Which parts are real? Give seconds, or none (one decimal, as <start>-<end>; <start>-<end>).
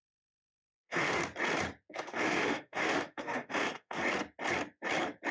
1.2-1.9; 4.0-5.3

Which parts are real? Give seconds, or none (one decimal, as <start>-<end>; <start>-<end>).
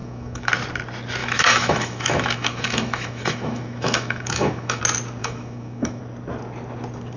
0.5-1.2; 4.8-5.2; 6.0-7.2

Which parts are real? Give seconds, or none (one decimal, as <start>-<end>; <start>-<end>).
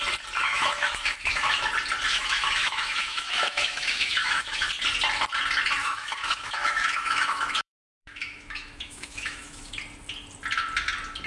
0.0-0.4; 1.7-2.1; 4.7-5.8; 9.8-11.3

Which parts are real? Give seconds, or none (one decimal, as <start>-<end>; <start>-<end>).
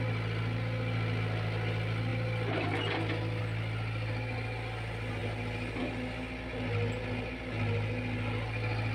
0.0-8.9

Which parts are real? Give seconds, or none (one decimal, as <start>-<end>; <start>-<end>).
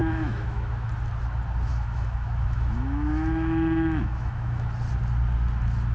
0.9-1.7; 4.7-5.9